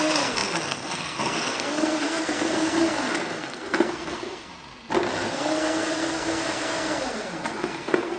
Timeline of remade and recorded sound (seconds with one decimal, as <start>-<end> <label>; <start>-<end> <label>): 0.0-4.5 remade; 4.5-5.3 recorded; 5.3-8.2 remade